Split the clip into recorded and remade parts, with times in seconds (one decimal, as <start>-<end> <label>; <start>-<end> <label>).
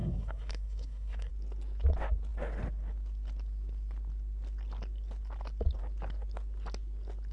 0.0-1.3 remade; 1.3-7.3 recorded